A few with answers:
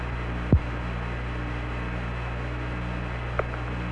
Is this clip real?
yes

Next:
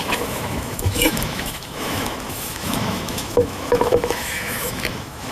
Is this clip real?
no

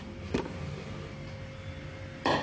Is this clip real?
yes